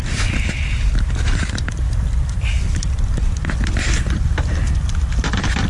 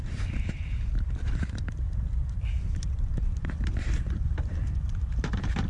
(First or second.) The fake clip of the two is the second